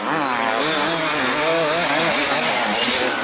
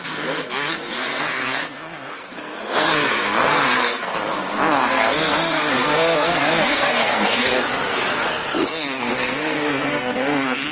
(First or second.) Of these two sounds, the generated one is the second